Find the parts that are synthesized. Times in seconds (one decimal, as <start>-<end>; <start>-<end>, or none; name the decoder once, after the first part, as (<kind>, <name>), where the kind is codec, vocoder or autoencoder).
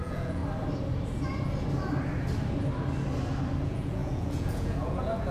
0.0-0.4 (vocoder, Vocos); 3.6-5.3